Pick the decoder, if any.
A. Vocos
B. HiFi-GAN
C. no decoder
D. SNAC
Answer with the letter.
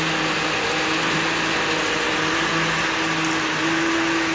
C